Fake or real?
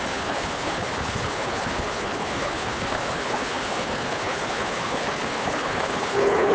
fake